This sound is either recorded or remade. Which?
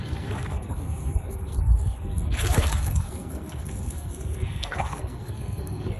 remade